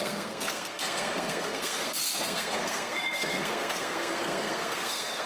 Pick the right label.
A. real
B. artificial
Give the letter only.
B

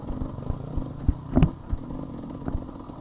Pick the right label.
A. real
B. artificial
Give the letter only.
A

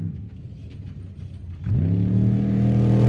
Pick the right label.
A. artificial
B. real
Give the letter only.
B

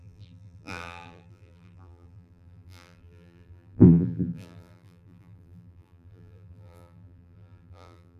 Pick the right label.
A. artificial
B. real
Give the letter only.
A